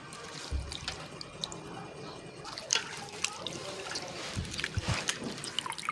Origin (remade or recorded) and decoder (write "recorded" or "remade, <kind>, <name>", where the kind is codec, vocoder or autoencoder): recorded